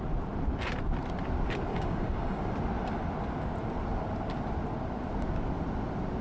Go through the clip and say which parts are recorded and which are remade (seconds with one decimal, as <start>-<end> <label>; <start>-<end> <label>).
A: 0.0-1.7 recorded; 1.7-2.5 remade; 2.5-6.2 recorded